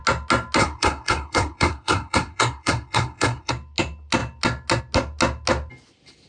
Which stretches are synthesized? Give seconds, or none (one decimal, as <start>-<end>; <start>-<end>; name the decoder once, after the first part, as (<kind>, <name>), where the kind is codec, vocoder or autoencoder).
0.6-3.5 (codec, SNAC)